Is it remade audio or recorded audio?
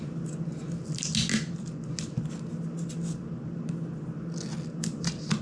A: recorded